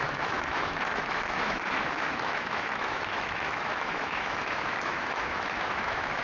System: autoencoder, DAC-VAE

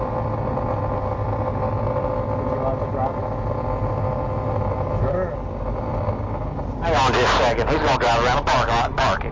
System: none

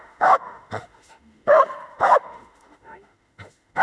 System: autoencoder, DAC-VAE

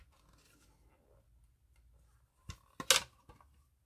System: none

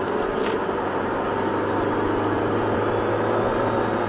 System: vocoder, BigVGAN v2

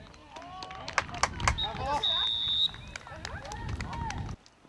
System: none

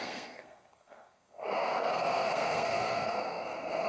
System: codec, SNAC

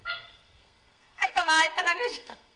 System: codec, SNAC